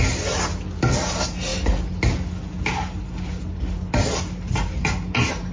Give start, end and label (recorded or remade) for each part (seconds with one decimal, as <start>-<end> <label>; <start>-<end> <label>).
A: 0.0-5.5 recorded